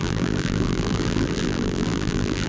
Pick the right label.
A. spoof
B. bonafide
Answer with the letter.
A